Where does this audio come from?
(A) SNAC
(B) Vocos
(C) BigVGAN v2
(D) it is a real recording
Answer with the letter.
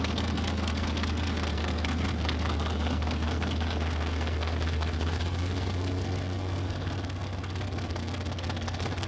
A